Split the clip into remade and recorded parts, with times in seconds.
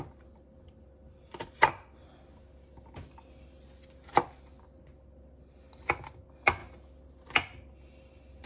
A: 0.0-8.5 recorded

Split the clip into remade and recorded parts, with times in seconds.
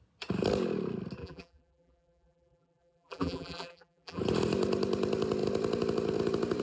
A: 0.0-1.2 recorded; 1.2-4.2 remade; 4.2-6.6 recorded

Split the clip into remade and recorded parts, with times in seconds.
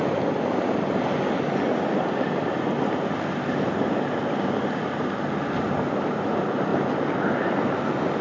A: 0.0-8.2 recorded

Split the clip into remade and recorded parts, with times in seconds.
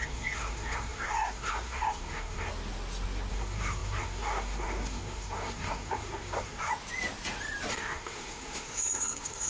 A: 0.0-2.5 remade; 2.5-3.3 recorded; 3.3-6.7 remade; 6.7-7.7 recorded; 7.7-9.5 remade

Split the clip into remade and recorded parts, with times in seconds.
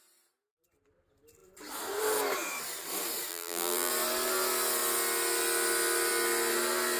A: 0.0-3.3 recorded; 3.3-3.9 remade; 3.9-7.0 recorded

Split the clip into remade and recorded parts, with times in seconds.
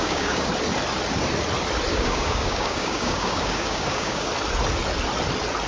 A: 0.0-0.5 remade; 0.5-1.9 recorded; 1.9-4.3 remade; 4.3-5.7 recorded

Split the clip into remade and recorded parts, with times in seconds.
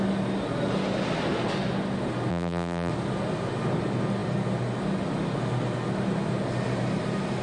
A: 0.0-2.3 recorded; 2.3-2.9 remade; 2.9-7.4 recorded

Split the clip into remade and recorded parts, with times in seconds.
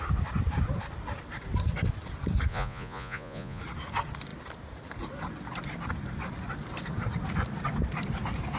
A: 0.0-2.5 recorded; 2.5-3.6 remade; 3.6-8.6 recorded